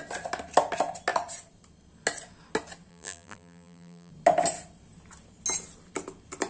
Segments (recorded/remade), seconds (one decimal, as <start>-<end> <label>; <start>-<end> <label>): 0.0-2.9 recorded; 2.9-4.1 remade; 4.1-6.5 recorded